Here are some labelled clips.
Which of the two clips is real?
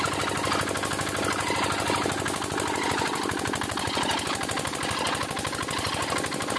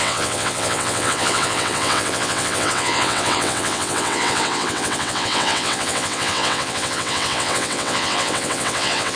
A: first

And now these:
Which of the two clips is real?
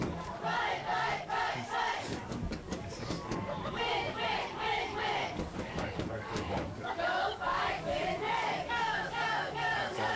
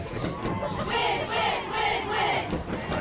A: second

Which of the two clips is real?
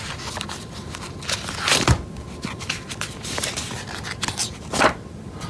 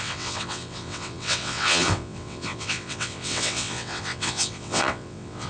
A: first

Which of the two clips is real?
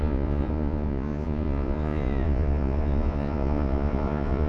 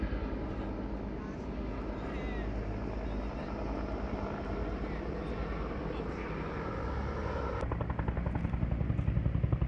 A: second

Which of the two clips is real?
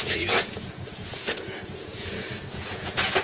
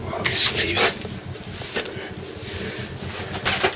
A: second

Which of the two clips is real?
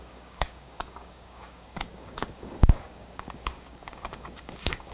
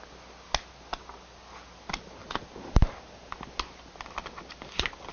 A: second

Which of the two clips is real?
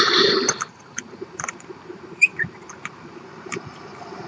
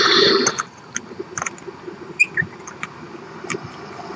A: second